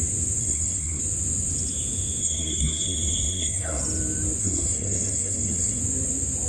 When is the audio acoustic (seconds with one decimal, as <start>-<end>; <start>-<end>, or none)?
0.0-0.4; 1.0-2.2; 3.8-4.4; 5.8-6.5